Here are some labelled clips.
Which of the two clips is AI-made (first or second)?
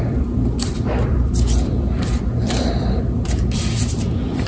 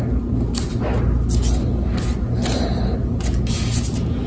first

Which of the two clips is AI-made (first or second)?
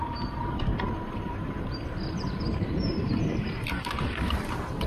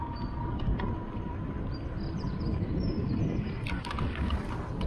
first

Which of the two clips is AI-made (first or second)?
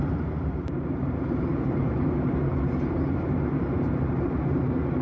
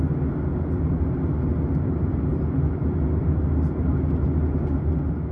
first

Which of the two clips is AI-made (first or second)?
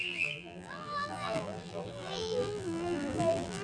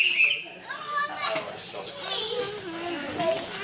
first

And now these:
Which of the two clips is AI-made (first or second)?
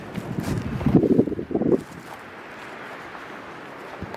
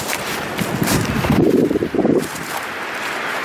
second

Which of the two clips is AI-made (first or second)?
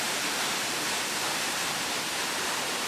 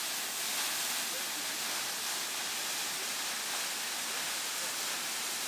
first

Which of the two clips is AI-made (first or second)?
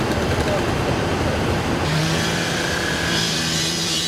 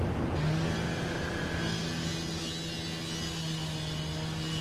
first